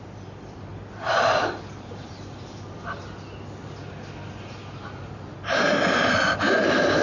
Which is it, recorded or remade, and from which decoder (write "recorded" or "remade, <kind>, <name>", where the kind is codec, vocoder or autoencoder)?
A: recorded